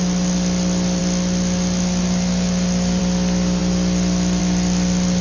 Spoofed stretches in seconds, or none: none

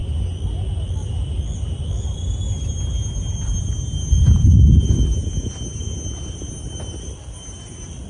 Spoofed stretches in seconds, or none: none

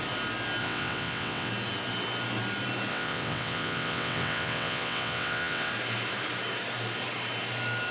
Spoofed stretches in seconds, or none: 0.6-1.5 (vocoder, WaveNeXt); 2.9-5.7

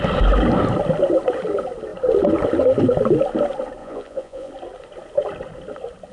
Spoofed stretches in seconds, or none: 3.8-4.5 (vocoder, Vocos)